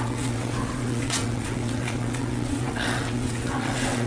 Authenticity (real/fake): fake